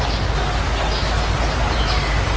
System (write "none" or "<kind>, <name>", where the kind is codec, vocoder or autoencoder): none